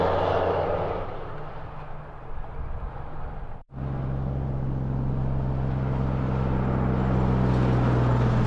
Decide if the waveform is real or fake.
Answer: real